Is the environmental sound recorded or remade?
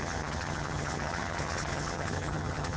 remade